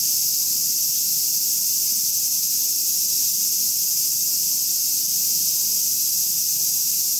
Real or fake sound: real